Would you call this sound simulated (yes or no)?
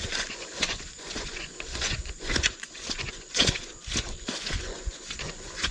yes